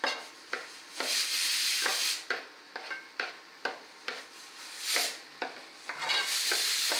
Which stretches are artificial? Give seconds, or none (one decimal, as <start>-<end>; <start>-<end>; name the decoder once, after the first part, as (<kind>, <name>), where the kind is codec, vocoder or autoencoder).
none